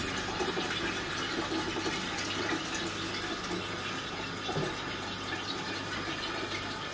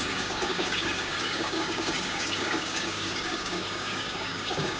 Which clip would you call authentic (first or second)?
first